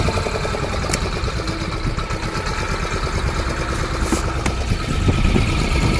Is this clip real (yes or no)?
yes